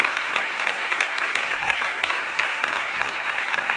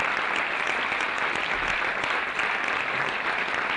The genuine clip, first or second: second